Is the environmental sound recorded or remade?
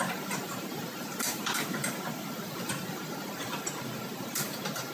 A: remade